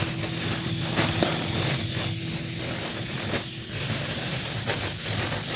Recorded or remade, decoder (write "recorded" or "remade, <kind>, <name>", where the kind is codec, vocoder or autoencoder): recorded